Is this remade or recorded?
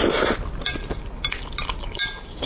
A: recorded